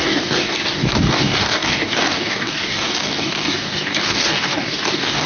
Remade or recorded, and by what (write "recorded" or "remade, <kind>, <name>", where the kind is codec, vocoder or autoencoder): remade, codec, DAC